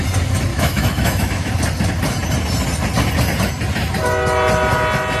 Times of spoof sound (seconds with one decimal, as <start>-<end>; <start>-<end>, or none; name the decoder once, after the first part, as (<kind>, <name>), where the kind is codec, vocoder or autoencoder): 0.5-1.5 (autoencoder, DAC-VAE)